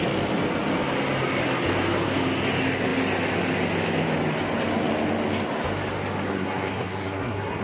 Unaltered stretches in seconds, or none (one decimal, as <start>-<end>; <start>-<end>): 0.0-6.3